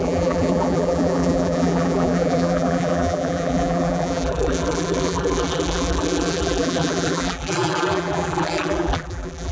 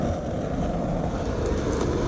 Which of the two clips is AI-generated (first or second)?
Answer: first